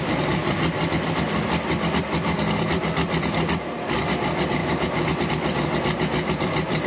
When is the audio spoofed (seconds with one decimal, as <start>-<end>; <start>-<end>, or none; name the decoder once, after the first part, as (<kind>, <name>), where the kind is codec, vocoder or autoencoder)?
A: 4.6-5.3 (vocoder, BigVGAN v2)